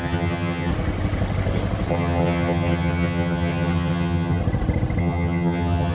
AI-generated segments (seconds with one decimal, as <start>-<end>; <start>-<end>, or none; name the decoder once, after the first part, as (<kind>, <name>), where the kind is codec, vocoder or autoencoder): 0.0-0.7 (vocoder, HiFi-GAN); 1.9-4.4; 5.0-5.9